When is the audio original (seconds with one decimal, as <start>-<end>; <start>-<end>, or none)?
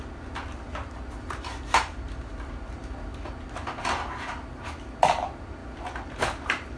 1.5-2.3; 2.8-5.0